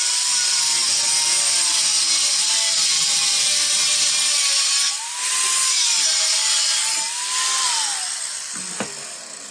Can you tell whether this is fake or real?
real